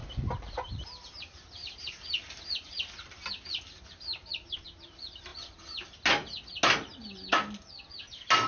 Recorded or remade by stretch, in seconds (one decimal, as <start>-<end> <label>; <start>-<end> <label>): 0.0-8.5 recorded

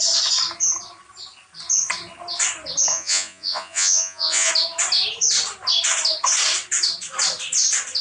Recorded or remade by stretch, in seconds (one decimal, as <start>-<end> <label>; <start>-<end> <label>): 0.0-2.9 recorded; 2.9-4.5 remade; 4.5-8.0 recorded

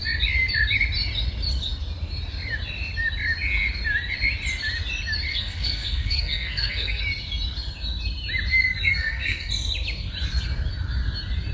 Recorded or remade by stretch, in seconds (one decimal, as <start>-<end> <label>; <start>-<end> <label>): 0.0-5.3 recorded; 5.3-7.0 remade; 7.0-8.5 recorded; 8.5-9.5 remade; 9.5-11.5 recorded

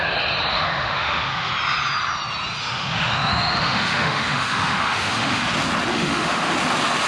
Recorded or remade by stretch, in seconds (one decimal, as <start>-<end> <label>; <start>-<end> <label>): 0.0-0.5 recorded; 0.5-1.5 remade; 1.5-2.6 recorded; 2.6-5.4 remade; 5.4-5.9 recorded; 5.9-6.5 remade; 6.5-7.1 recorded

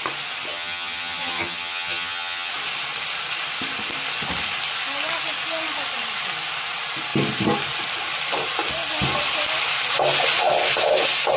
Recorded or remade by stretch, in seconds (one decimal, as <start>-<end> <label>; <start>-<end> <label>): 0.0-0.5 recorded; 0.5-2.5 remade; 2.5-11.4 recorded

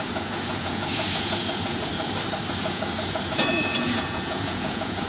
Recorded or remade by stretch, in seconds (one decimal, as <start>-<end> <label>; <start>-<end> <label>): 0.0-1.9 remade; 1.9-2.6 recorded; 2.6-5.1 remade

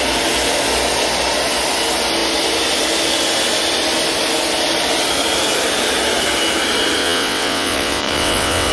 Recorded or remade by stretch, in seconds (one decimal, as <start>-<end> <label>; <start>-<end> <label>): 0.0-7.0 recorded; 7.0-8.7 remade

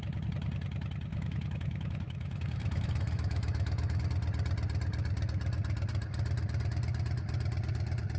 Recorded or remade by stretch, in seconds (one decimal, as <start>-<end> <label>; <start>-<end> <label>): 0.0-1.1 recorded; 1.1-4.0 remade; 4.0-8.2 recorded